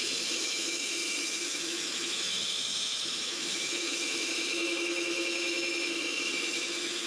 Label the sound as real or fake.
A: fake